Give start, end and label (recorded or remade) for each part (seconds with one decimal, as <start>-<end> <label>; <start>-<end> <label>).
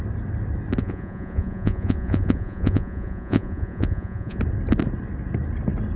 0.0-0.8 recorded; 0.8-4.4 remade; 4.4-6.0 recorded